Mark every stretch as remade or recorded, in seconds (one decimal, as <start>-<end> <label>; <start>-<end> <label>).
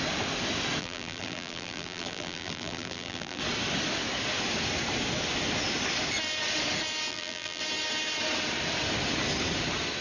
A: 0.0-0.8 recorded; 0.8-3.4 remade; 3.4-7.1 recorded; 7.1-7.6 remade; 7.6-10.0 recorded